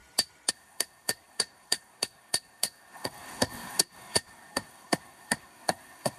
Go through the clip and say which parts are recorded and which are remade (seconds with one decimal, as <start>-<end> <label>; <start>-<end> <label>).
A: 0.0-0.5 recorded; 0.5-6.2 remade